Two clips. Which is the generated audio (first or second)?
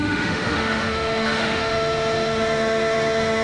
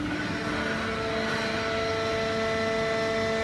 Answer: first